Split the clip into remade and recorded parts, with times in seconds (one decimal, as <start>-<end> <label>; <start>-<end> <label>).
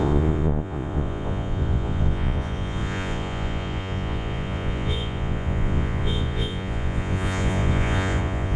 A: 0.0-8.6 remade